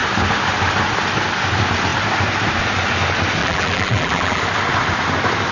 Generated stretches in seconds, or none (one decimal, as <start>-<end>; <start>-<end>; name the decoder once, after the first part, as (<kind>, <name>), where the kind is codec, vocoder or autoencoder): 3.4-4.4 (vocoder, BigVGAN v2)